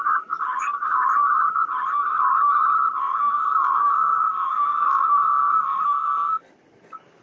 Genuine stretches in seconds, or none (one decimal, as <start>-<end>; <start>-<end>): 0.0-3.0; 6.4-7.2